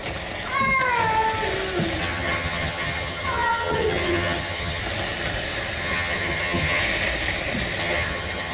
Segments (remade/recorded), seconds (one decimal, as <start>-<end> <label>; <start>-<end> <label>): 0.0-2.0 recorded; 2.0-4.8 remade; 4.8-5.8 recorded; 5.8-6.8 remade; 6.8-7.8 recorded; 7.8-8.5 remade